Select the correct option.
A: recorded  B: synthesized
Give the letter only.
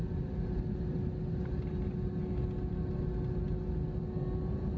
A